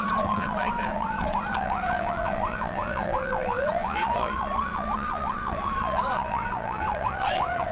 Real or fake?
fake